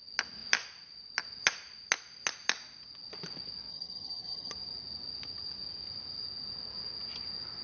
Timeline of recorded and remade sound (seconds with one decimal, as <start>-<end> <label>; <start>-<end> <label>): 0.0-3.7 recorded; 3.7-4.5 remade; 4.5-7.6 recorded